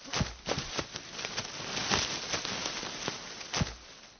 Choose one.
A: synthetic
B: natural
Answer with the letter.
B